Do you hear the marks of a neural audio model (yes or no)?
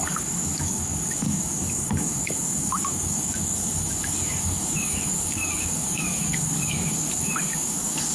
yes